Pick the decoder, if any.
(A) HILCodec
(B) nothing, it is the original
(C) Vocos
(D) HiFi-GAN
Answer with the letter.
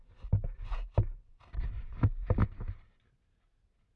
B